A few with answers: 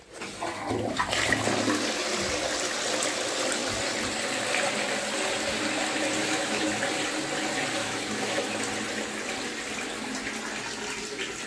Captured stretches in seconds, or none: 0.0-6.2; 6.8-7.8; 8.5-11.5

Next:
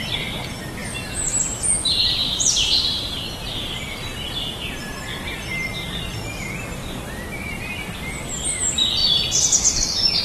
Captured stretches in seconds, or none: 0.0-2.2; 3.2-10.2

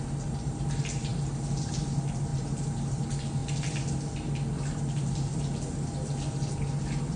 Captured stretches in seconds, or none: 0.0-2.3; 3.0-7.2

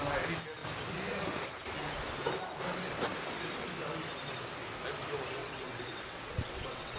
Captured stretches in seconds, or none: 0.0-5.4

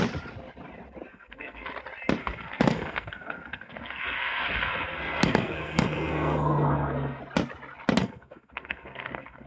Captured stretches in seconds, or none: 0.0-1.1; 1.7-2.2; 7.2-8.0

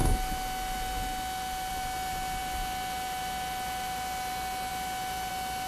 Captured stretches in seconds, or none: 0.0-5.7

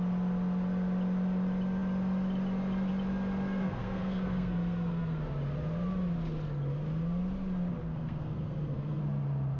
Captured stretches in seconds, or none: 0.0-3.6; 5.2-7.8; 9.0-9.6

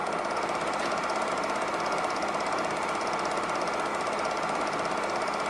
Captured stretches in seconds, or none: 0.0-5.5